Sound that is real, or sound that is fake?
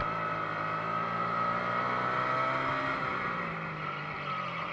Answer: real